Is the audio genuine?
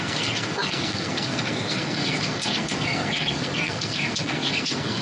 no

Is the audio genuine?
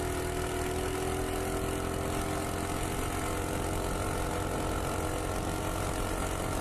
yes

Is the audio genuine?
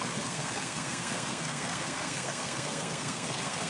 no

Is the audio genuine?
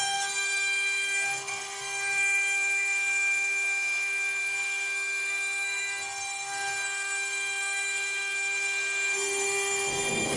no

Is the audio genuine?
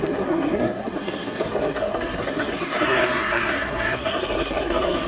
no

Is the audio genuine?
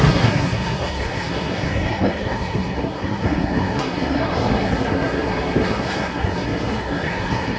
no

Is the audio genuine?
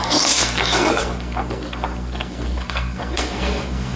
no